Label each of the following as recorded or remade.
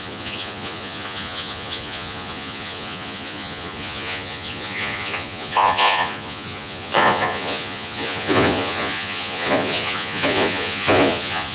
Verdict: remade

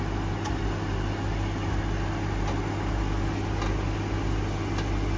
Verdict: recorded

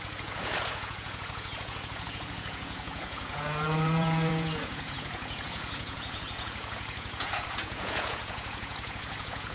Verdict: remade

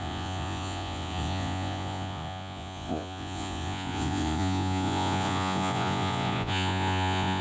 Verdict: remade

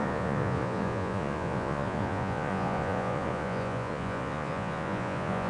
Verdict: remade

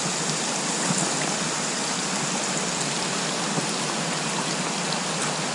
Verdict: recorded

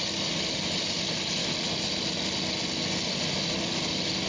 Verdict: recorded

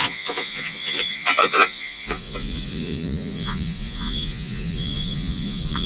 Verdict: remade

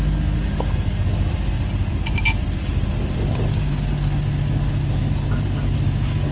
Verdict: recorded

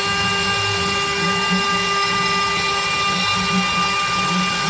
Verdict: recorded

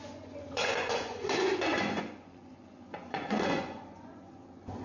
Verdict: remade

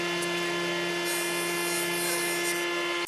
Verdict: recorded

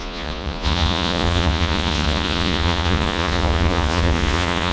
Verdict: remade